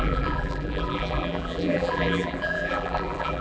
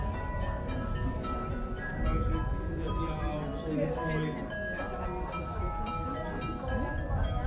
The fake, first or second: first